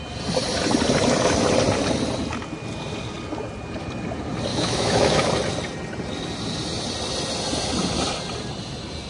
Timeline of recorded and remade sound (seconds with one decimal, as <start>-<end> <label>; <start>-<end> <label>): 0.0-4.5 recorded; 4.5-5.3 remade; 5.3-9.1 recorded